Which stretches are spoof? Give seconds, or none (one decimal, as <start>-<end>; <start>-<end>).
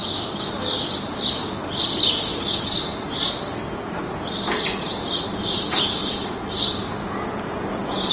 7.0-8.1